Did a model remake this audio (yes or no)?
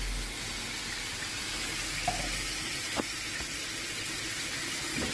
no